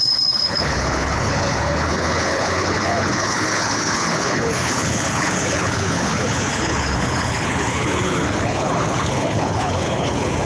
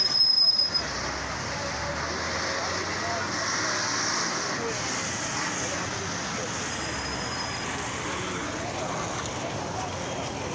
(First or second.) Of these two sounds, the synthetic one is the first